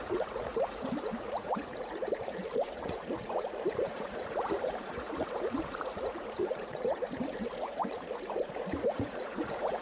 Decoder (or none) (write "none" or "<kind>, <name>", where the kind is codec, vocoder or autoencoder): vocoder, Vocos